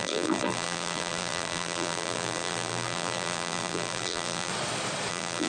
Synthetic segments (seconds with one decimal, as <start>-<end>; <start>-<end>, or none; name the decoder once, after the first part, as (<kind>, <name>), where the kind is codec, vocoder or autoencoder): 0.0-4.5 (vocoder, BigVGAN v2); 5.1-5.5

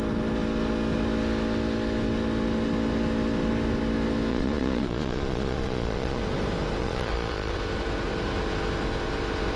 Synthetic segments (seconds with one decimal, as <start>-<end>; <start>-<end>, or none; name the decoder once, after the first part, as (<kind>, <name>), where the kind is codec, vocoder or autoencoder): 4.3-6.2 (vocoder, Vocos); 6.8-7.5

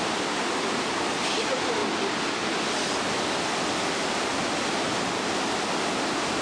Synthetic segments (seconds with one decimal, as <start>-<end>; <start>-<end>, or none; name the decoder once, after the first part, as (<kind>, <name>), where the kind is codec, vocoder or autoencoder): none

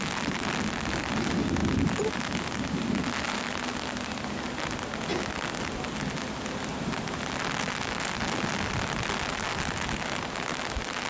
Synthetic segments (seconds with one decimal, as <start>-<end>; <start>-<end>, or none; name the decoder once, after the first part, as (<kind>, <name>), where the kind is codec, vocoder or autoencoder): none

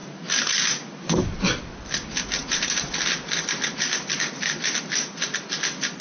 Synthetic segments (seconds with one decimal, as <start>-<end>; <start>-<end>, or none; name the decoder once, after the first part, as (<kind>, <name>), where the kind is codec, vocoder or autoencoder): 0.0-1.3 (vocoder, BigVGAN v2)

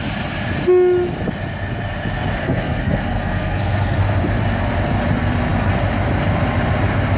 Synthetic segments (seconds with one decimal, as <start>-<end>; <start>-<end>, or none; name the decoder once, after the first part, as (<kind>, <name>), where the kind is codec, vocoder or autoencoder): 2.4-4.2 (codec, SNAC)